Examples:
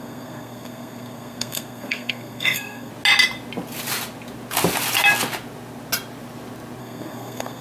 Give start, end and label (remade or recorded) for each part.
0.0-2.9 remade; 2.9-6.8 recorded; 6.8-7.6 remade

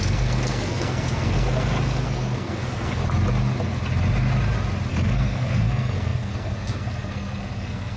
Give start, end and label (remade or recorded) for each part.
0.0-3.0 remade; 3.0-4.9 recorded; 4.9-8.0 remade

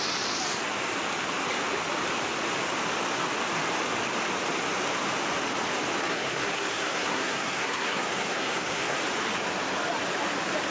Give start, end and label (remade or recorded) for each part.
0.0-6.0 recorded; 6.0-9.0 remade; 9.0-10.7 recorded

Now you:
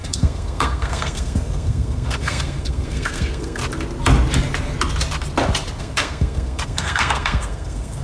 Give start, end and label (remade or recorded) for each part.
0.0-3.6 remade; 3.6-5.8 recorded; 5.8-8.0 remade